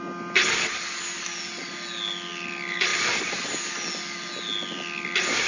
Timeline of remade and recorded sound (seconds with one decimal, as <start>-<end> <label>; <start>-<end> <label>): 0.0-5.5 recorded